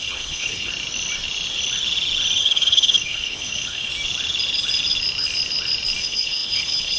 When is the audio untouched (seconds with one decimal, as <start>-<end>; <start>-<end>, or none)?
0.7-2.4; 3.9-6.0